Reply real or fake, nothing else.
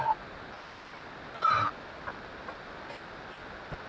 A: real